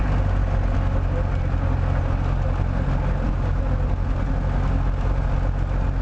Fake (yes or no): no